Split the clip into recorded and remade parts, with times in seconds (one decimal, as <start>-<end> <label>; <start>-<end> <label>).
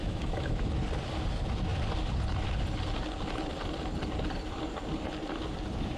0.0-0.7 remade; 0.7-6.0 recorded